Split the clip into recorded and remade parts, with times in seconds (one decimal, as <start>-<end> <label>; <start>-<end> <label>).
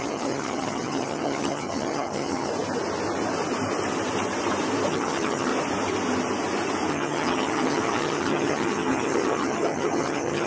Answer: 0.0-2.5 remade; 2.5-4.9 recorded; 4.9-5.5 remade; 5.5-6.9 recorded; 6.9-10.5 remade